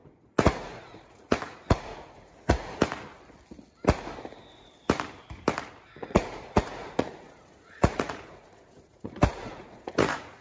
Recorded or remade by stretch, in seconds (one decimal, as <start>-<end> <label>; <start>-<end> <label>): 0.0-2.8 remade; 2.8-6.0 recorded; 6.0-10.4 remade